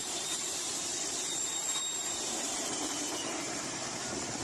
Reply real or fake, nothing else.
fake